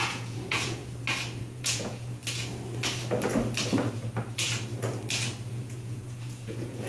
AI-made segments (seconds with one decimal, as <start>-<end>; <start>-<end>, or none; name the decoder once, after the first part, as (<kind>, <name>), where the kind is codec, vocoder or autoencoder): 0.0-0.8 (vocoder, Vocos); 1.4-2.2; 5.5-6.9